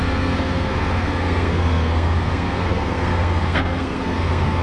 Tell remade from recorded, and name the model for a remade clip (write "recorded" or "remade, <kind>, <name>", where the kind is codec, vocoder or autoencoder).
remade, codec, SNAC